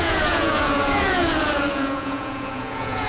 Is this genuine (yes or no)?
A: no